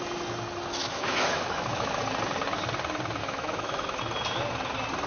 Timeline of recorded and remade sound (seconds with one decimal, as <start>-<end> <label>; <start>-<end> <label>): 0.0-0.8 recorded; 0.8-2.0 remade; 2.0-3.2 recorded; 3.2-4.0 remade; 4.0-5.1 recorded